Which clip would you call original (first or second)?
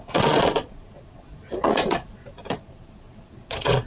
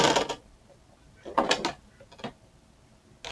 second